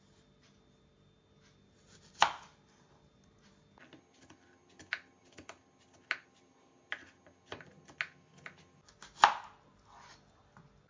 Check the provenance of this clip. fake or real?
real